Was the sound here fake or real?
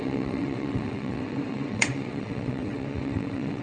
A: fake